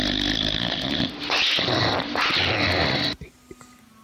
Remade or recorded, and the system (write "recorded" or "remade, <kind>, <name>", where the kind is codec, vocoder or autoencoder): recorded